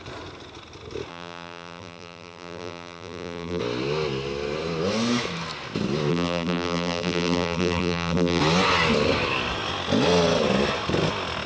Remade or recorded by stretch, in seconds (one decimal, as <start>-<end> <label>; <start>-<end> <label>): 0.0-1.1 recorded; 1.1-3.6 remade; 3.6-6.1 recorded; 6.1-8.4 remade; 8.4-11.5 recorded